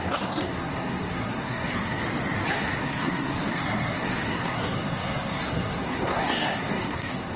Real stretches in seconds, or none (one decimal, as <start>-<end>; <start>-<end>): 2.0-2.5